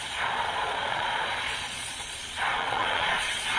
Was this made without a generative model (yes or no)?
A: no